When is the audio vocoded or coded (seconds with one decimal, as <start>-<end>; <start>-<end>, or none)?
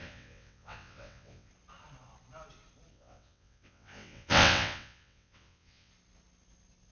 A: 0.0-1.5; 2.9-5.9